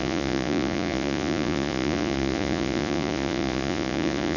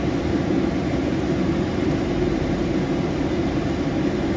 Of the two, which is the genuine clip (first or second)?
second